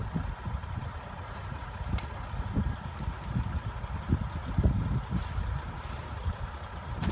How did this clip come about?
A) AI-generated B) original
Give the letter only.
B